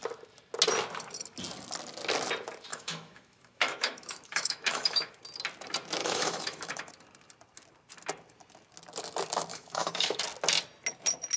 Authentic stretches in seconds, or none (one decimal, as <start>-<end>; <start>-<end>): 0.0-2.7; 5.2-6.0; 6.9-9.5; 10.2-11.4